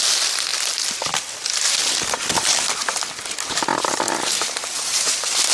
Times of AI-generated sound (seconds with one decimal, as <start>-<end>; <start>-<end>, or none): none